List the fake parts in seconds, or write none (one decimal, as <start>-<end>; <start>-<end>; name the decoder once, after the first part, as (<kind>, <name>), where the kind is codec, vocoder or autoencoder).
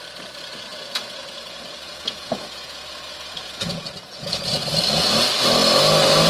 0.7-4.5 (vocoder, Vocos)